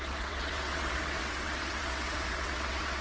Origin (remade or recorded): remade